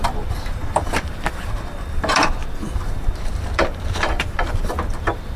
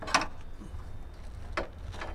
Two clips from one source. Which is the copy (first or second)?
first